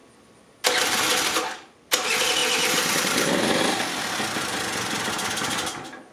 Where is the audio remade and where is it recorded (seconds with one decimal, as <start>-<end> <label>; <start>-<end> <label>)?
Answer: 0.0-6.1 recorded